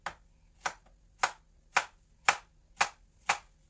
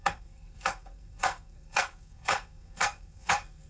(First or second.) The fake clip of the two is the second